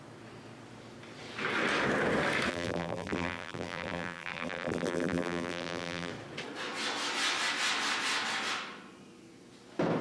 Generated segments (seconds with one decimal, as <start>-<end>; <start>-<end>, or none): 2.5-6.1